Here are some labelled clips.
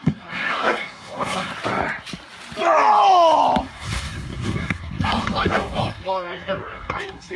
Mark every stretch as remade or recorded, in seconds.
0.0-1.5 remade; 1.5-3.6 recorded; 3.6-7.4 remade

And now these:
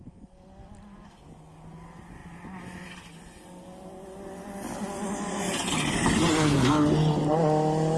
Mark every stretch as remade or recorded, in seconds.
0.0-8.0 recorded

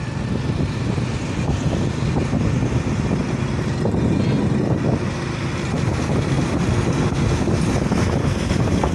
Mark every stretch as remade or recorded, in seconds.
0.0-8.2 recorded; 8.2-8.9 remade

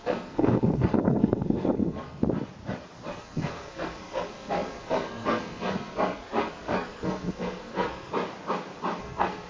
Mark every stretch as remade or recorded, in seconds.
0.0-2.2 remade; 2.2-3.1 recorded; 3.1-8.1 remade; 8.1-9.0 recorded; 9.0-9.5 remade

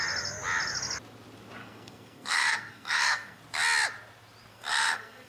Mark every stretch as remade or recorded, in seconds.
0.0-1.6 recorded; 1.6-3.4 remade; 3.4-4.5 recorded; 4.5-5.3 remade